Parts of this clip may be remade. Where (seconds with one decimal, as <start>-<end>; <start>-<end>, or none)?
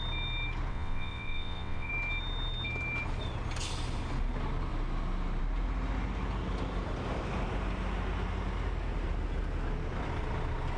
0.7-1.9